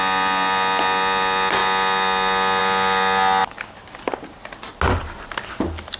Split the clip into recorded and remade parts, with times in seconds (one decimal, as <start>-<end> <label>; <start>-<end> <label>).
0.0-6.0 recorded